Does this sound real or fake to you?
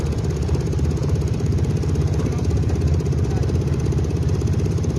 fake